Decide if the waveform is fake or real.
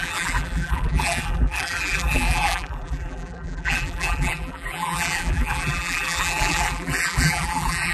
fake